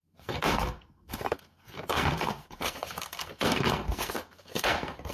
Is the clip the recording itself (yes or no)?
no